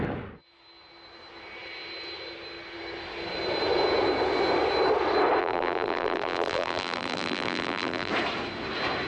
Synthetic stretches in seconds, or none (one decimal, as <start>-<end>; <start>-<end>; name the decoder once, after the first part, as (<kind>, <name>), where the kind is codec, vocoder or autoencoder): 5.4-8.1 (vocoder, BigVGAN v2)